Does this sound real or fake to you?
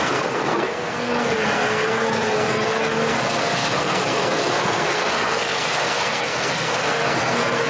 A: fake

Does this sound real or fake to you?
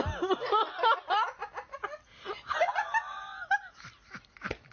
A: real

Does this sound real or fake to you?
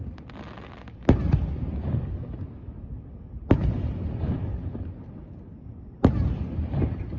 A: real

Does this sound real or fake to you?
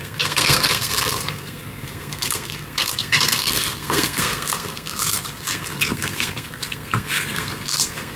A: fake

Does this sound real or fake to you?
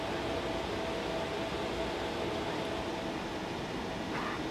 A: real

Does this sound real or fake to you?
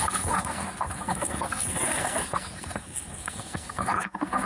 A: fake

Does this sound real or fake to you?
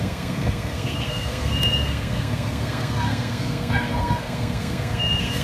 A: fake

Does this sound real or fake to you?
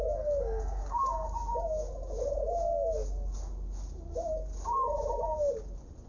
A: real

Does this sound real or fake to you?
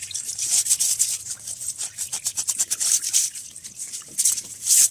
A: real